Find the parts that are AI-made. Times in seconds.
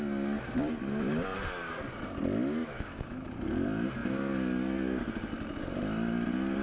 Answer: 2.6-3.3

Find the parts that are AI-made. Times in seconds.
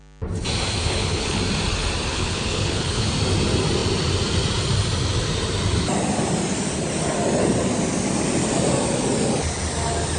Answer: 0.8-1.4; 2.1-3.1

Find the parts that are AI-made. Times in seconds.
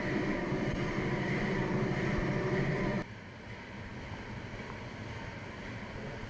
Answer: 2.2-3.0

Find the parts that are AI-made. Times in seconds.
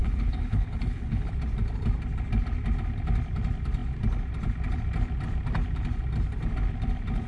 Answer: 0.0-1.3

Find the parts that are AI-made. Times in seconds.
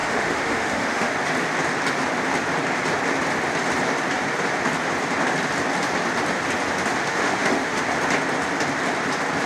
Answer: 0.0-1.1; 7.0-7.8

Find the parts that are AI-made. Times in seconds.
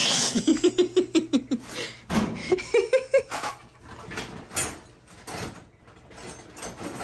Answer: 0.0-0.7; 2.4-3.5